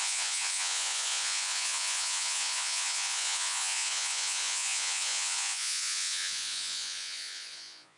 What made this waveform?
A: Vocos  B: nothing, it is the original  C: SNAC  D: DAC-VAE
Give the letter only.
A